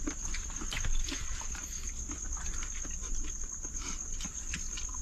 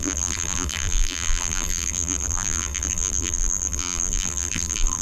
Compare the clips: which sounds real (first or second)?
first